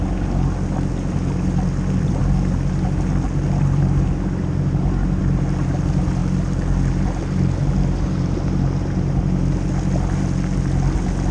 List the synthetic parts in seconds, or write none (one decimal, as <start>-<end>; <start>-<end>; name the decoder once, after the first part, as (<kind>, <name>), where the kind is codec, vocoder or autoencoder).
none